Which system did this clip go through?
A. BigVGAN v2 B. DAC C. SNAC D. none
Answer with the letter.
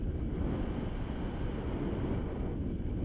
D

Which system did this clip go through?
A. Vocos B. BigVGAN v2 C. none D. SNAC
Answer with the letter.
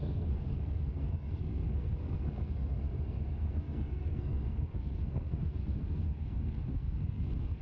D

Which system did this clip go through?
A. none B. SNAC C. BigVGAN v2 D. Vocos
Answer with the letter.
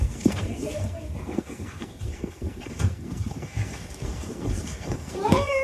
B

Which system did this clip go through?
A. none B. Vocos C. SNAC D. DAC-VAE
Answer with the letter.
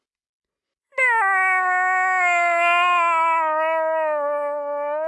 A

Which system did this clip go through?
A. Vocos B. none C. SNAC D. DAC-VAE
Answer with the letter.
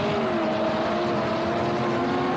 B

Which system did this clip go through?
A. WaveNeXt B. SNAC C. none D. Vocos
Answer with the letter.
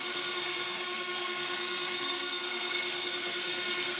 B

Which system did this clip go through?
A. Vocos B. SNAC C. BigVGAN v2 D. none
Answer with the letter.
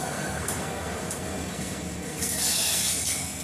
B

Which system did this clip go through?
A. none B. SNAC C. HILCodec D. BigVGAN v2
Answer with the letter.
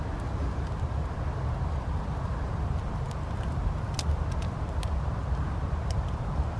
A